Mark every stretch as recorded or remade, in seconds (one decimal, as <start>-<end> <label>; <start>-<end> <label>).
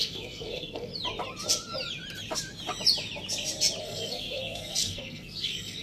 0.0-0.9 remade; 0.9-3.8 recorded; 3.8-5.8 remade